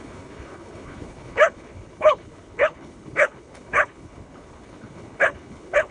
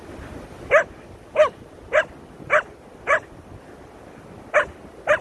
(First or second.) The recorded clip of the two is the second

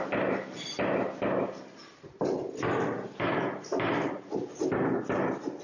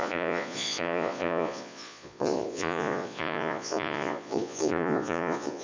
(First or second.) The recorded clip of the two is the first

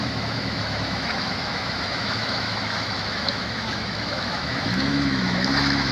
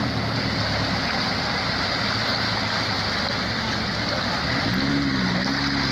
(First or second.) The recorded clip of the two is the second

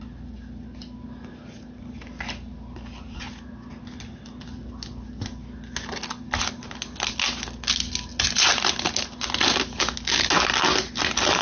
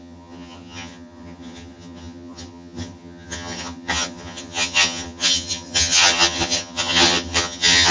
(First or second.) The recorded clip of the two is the first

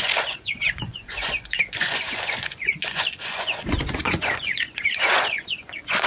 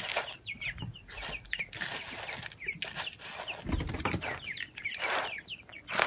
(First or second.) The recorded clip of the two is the second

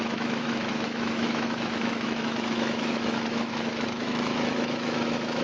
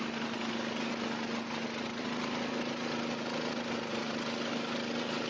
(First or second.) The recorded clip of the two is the second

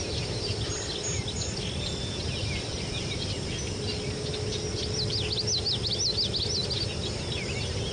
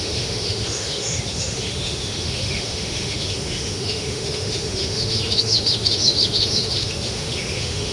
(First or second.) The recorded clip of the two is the first